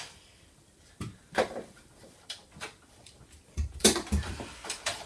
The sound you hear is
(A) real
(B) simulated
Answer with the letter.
B